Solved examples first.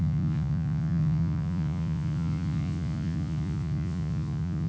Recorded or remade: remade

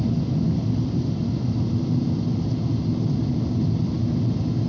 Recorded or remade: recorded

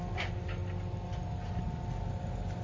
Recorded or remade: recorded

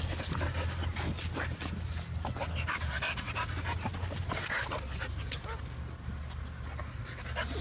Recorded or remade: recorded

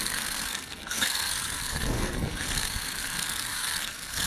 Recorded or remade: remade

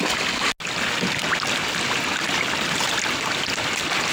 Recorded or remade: recorded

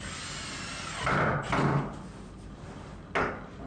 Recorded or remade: recorded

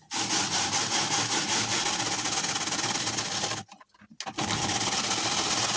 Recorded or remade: recorded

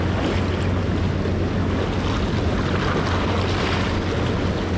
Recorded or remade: recorded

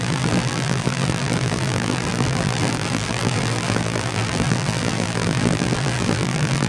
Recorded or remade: remade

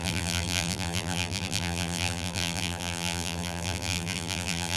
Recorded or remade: remade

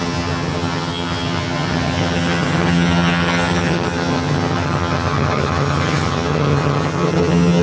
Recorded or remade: remade